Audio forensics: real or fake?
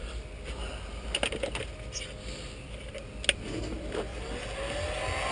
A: real